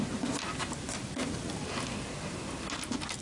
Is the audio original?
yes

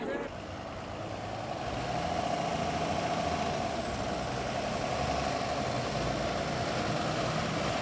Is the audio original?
yes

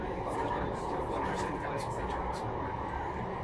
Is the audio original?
yes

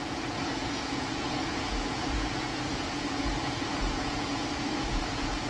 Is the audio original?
no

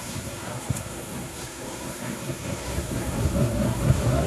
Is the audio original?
no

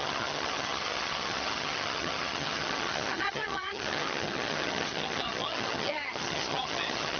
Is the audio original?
no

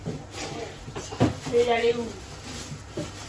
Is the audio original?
yes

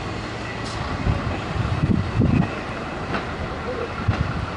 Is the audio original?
yes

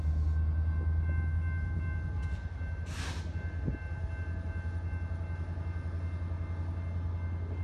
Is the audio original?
yes